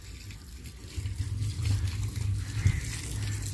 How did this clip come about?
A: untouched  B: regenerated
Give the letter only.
A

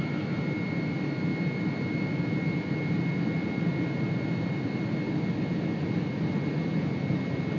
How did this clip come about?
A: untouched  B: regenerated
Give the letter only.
A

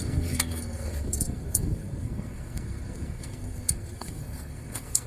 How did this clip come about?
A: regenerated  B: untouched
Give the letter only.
A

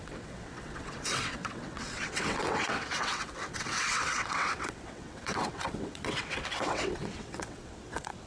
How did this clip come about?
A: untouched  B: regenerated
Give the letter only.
B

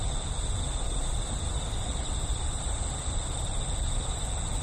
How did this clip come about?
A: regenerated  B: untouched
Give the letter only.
B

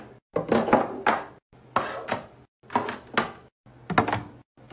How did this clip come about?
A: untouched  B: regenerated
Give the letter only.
A